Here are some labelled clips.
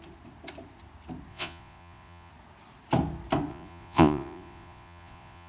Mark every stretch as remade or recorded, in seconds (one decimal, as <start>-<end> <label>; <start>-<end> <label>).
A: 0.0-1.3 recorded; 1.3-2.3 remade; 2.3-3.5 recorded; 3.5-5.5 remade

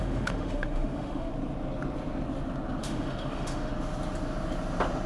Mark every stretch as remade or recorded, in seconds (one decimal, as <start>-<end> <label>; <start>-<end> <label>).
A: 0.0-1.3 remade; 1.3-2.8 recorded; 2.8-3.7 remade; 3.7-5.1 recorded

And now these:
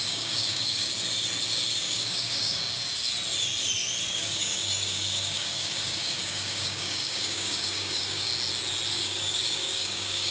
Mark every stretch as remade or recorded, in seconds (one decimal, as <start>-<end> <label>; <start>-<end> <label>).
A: 0.0-0.9 remade; 0.9-1.8 recorded; 1.8-2.6 remade; 2.6-4.1 recorded; 4.1-8.3 remade; 8.3-8.9 recorded; 8.9-10.3 remade

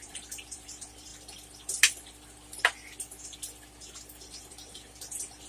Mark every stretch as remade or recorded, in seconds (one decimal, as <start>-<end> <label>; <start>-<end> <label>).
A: 0.0-1.1 remade; 1.1-4.4 recorded; 4.4-5.5 remade

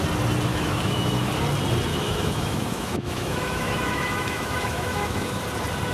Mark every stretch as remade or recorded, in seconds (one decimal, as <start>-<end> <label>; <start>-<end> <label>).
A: 0.0-0.5 recorded; 0.5-1.3 remade; 1.3-1.9 recorded; 1.9-5.4 remade; 5.4-5.9 recorded

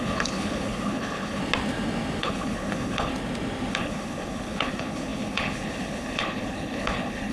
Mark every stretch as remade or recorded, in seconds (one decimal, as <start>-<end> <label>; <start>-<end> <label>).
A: 0.0-1.4 remade; 1.4-2.2 recorded; 2.2-3.1 remade; 3.1-3.7 recorded; 3.7-7.3 remade